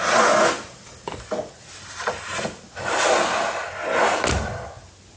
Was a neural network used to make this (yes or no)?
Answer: no